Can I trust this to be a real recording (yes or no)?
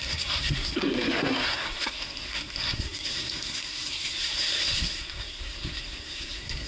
no